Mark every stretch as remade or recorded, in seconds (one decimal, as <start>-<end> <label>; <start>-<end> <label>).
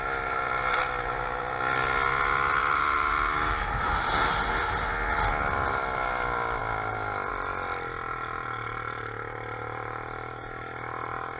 0.0-2.6 recorded; 2.6-3.9 remade; 3.9-11.4 recorded